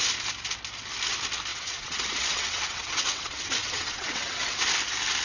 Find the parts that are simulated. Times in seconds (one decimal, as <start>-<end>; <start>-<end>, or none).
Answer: 1.5-4.6